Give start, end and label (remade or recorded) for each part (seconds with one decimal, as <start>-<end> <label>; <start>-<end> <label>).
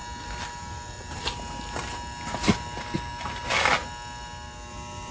0.0-5.1 recorded